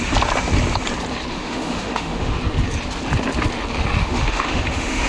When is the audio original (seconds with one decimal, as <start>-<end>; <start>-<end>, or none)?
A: 0.0-1.3; 2.4-4.0